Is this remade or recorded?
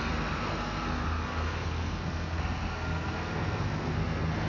remade